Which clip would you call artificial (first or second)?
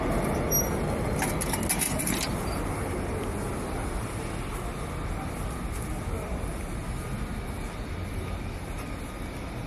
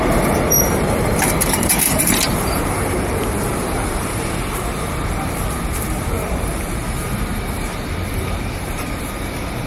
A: second